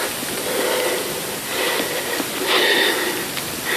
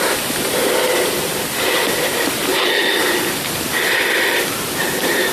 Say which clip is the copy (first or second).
second